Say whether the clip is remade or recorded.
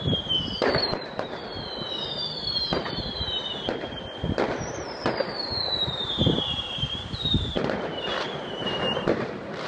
remade